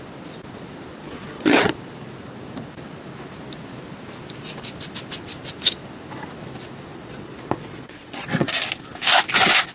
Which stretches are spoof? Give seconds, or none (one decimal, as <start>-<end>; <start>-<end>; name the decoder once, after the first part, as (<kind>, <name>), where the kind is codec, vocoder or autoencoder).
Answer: 0.9-1.7 (vocoder, Vocos); 6.9-8.6